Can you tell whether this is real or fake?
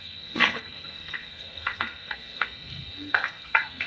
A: fake